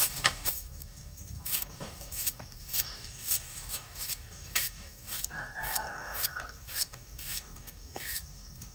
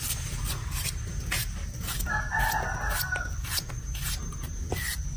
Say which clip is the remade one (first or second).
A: first